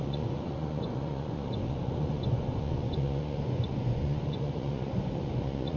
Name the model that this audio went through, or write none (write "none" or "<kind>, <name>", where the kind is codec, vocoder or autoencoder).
vocoder, Vocos